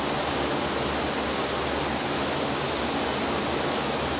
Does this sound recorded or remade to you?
recorded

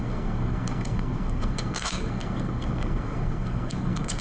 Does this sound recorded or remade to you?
remade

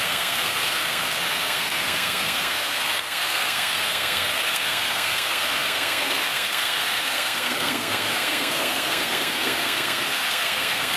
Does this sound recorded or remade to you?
remade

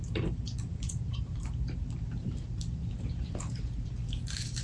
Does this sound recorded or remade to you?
remade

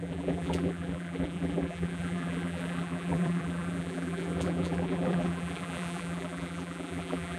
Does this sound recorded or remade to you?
remade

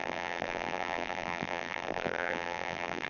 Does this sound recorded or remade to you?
remade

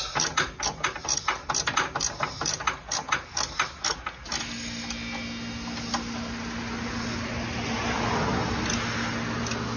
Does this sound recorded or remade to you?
recorded